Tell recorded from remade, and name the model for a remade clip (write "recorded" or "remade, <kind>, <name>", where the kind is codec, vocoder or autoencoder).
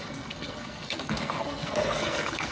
remade, codec, SNAC